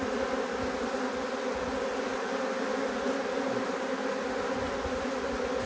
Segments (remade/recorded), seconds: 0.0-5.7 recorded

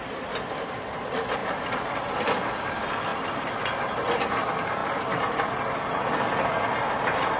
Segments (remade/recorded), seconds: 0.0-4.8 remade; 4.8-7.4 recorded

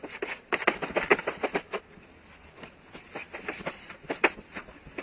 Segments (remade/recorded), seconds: 0.0-5.0 recorded

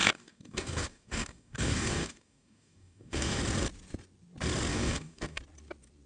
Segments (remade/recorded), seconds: 0.0-3.4 remade; 3.4-4.7 recorded; 4.7-5.4 remade; 5.4-6.1 recorded